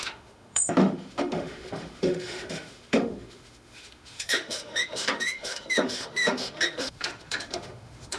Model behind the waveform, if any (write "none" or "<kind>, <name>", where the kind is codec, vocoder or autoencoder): autoencoder, DAC-VAE